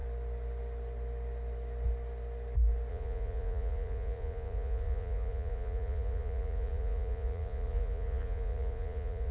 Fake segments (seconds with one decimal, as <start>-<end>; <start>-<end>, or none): 2.9-9.3